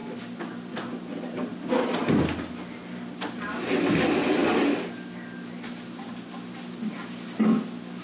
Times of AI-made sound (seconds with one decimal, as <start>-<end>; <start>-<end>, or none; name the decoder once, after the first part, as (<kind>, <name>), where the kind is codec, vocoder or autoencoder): none

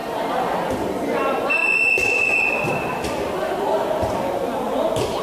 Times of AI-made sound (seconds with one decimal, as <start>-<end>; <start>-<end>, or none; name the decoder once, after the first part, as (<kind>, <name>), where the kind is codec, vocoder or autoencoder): 0.7-1.6 (vocoder, BigVGAN v2); 4.3-5.2

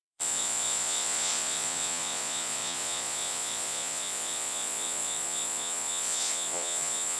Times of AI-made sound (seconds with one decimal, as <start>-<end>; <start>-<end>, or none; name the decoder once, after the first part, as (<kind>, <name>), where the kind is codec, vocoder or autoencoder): 0.0-7.2 (vocoder, Vocos)

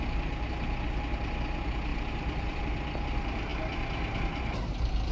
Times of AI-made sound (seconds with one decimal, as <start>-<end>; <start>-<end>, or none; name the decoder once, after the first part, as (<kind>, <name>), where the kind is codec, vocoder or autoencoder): 1.9-2.6 (vocoder, BigVGAN v2)

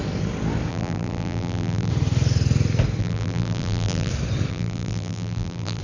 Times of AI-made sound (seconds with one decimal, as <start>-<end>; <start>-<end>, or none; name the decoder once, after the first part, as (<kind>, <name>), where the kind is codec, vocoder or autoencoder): 0.7-1.9 (vocoder, BigVGAN v2); 3.0-4.1; 4.5-5.8

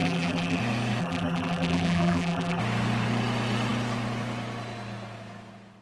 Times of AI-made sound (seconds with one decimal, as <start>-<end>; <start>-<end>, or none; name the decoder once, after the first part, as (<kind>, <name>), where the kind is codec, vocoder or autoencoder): 0.0-0.6 (vocoder, BigVGAN v2); 1.0-2.6